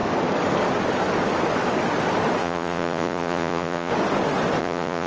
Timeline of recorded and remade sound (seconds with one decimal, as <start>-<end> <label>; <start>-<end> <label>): 0.0-2.4 recorded; 2.4-3.9 remade; 3.9-4.6 recorded; 4.6-5.1 remade